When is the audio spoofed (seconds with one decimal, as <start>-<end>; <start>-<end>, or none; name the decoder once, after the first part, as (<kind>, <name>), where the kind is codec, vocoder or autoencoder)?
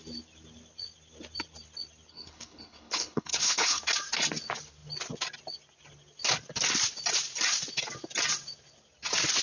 2.1-3.8 (codec, HILCodec)